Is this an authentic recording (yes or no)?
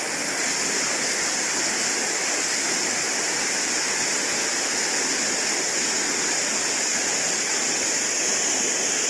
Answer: yes